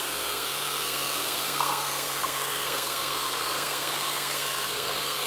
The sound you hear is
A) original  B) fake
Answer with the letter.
B